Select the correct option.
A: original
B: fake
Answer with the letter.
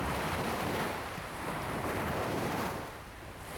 B